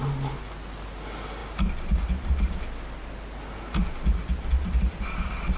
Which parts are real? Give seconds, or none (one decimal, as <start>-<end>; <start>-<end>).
0.0-5.6